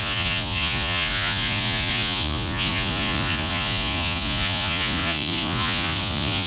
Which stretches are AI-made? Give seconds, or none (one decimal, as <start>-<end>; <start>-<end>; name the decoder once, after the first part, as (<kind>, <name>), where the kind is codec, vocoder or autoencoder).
0.0-6.5 (vocoder, Vocos)